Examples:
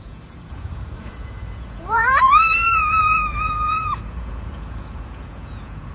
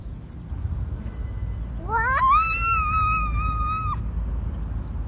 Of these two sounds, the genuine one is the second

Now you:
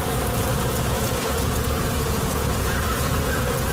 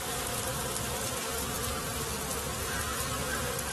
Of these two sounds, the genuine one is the second